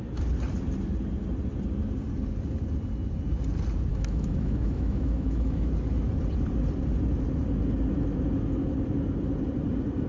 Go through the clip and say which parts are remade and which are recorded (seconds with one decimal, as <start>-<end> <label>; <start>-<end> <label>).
0.0-3.9 recorded; 3.9-5.7 remade; 5.7-10.1 recorded